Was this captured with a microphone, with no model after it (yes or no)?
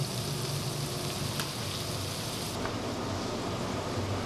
yes